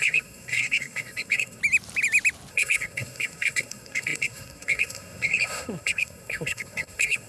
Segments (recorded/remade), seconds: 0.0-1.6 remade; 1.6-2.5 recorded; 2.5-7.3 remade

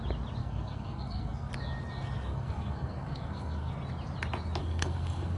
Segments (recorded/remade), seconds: 0.0-0.4 recorded; 0.4-1.5 remade; 1.5-2.3 recorded; 2.3-3.7 remade; 3.7-4.6 recorded; 4.6-5.4 remade

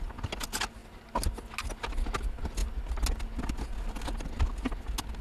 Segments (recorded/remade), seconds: 0.0-5.2 recorded